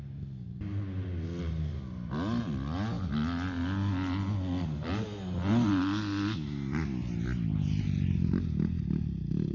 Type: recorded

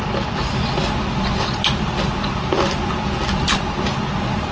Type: recorded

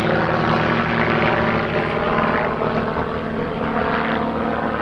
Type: recorded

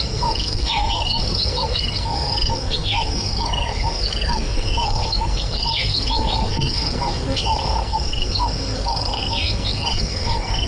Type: remade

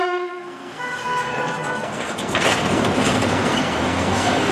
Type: remade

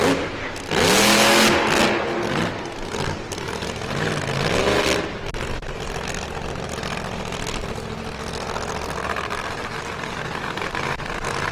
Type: recorded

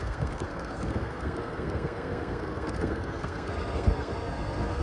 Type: remade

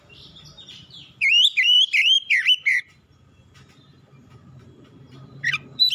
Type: remade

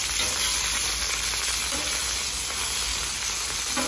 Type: recorded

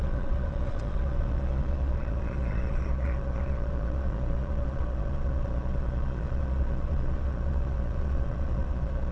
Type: remade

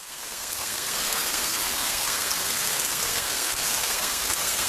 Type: remade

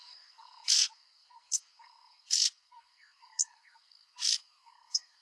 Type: remade